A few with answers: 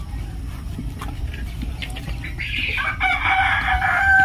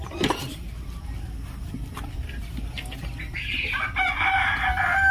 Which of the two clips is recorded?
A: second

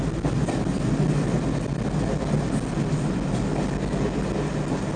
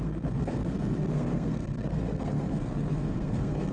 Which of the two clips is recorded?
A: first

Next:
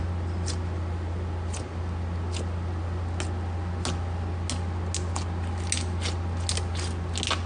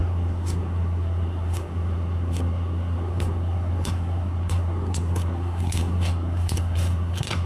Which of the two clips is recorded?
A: first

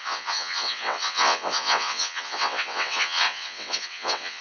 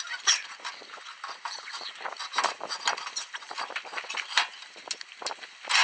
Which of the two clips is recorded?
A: second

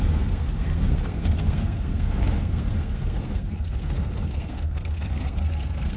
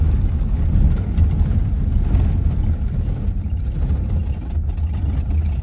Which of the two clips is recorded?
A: second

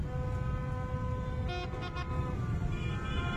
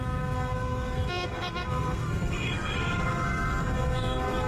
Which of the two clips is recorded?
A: first